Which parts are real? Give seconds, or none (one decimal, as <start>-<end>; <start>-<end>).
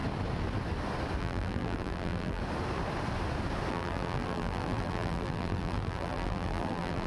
0.0-1.2; 2.4-3.7